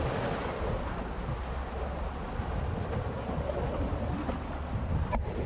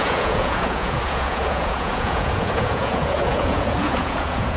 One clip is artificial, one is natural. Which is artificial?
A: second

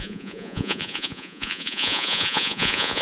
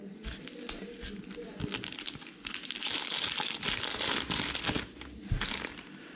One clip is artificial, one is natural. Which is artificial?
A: first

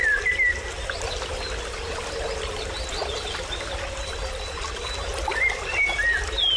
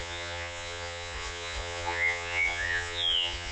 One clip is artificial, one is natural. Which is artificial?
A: second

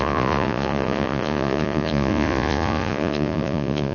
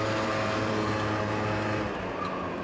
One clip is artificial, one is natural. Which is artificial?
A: first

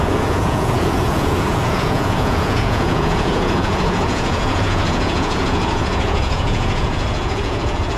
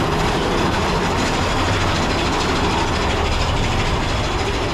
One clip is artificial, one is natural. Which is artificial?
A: first